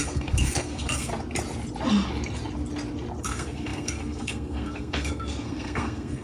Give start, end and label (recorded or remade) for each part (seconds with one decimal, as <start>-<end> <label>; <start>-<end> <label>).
0.0-1.1 remade; 1.1-3.2 recorded; 3.2-6.2 remade